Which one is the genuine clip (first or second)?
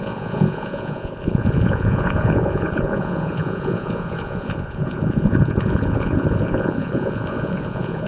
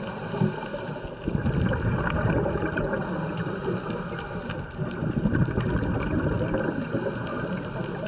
second